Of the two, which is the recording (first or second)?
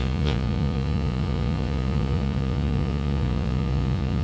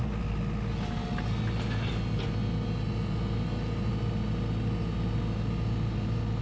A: second